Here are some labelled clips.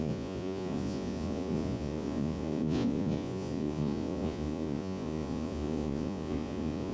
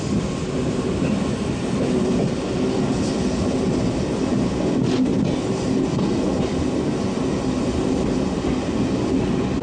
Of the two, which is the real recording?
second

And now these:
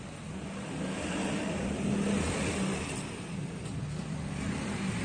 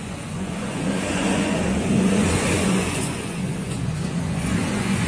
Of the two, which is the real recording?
first